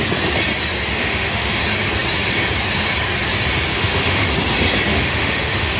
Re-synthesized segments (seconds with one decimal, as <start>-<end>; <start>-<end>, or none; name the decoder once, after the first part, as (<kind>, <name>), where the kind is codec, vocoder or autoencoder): 1.0-1.6 (autoencoder, DAC-VAE); 3.7-4.3; 4.9-5.8